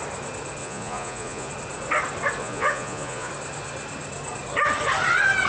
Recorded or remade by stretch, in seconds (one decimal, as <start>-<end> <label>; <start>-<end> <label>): 0.0-0.6 recorded; 0.6-1.5 remade; 1.5-2.4 recorded; 2.4-3.3 remade; 3.3-5.5 recorded